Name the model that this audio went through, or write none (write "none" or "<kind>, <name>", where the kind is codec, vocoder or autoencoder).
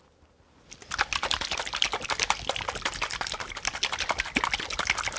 none